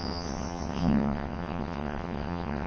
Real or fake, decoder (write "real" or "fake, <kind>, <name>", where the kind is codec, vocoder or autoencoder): fake, vocoder, WaveNeXt